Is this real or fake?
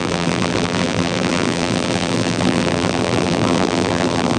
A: fake